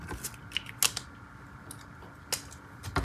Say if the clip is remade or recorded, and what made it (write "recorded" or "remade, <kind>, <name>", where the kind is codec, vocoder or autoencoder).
recorded